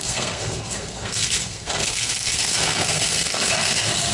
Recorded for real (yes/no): no